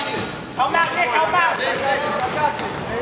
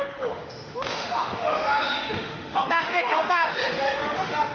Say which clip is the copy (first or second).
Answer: second